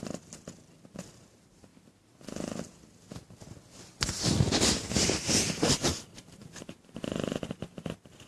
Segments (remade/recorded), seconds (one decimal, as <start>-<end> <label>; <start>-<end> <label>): 0.0-1.7 remade; 1.7-5.1 recorded; 5.1-8.3 remade